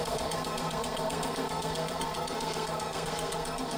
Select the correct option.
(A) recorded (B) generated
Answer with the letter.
B